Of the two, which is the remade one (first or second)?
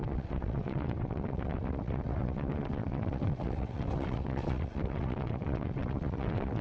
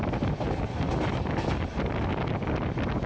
first